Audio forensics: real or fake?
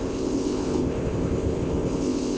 fake